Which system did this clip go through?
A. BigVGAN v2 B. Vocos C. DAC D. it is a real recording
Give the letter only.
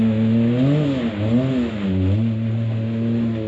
D